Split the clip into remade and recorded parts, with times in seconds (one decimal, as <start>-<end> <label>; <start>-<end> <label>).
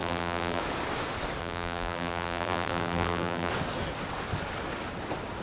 0.0-0.6 remade; 0.6-1.4 recorded; 1.4-3.5 remade; 3.5-5.4 recorded